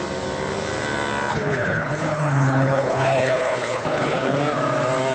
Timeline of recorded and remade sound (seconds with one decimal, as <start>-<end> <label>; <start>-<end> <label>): 0.0-1.3 recorded; 1.3-4.4 remade; 4.4-5.1 recorded

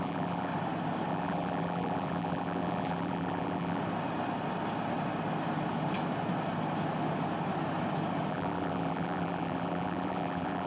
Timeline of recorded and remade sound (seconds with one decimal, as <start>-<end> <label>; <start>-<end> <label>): 0.0-0.5 remade; 0.5-1.1 recorded; 1.1-3.8 remade; 3.8-8.3 recorded; 8.3-10.7 remade